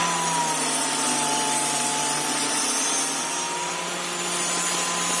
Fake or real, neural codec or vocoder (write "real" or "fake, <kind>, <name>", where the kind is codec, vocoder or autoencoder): real